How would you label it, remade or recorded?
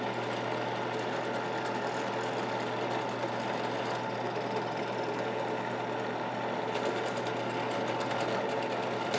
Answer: recorded